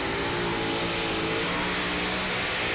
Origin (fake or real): real